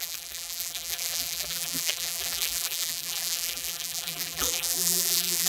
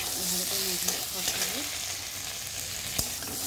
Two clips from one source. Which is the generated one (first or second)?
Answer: first